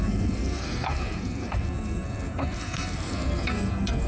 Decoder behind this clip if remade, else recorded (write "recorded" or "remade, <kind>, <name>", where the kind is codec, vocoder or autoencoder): remade, codec, SNAC